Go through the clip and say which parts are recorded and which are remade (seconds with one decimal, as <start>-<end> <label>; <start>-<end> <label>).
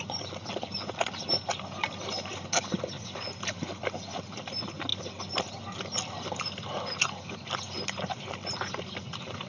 0.0-9.5 recorded